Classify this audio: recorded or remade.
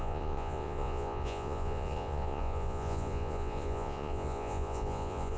remade